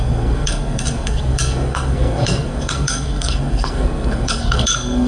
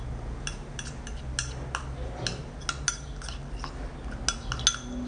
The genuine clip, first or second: second